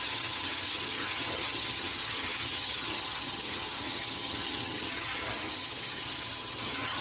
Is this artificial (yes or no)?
yes